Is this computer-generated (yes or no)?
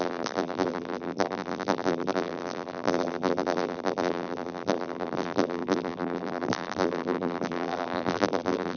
yes